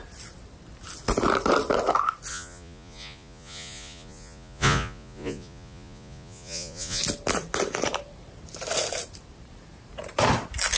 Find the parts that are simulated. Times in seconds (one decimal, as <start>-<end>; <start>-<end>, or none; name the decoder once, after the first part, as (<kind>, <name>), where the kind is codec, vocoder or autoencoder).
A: 2.3-7.0 (vocoder, Vocos)